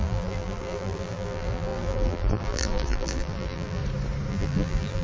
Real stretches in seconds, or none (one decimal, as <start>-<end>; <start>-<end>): 3.8-4.3